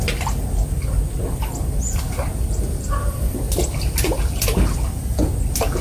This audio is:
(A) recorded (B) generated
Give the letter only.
A